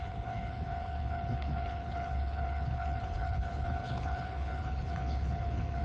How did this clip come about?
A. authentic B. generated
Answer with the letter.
B